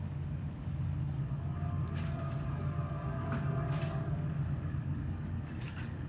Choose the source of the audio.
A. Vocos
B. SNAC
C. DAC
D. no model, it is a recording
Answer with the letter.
C